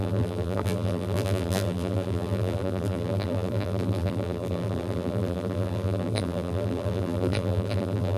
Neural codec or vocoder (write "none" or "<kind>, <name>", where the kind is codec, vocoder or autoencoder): vocoder, BigVGAN v2